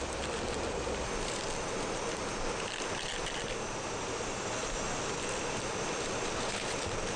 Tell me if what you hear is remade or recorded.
recorded